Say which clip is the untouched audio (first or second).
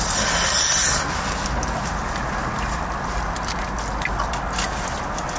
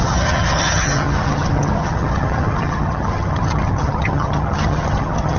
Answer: first